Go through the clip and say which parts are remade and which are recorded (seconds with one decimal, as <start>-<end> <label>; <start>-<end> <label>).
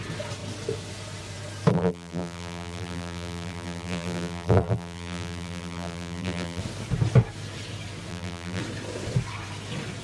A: 0.0-1.7 recorded; 1.7-6.6 remade; 6.6-8.1 recorded; 8.1-8.6 remade; 8.6-10.0 recorded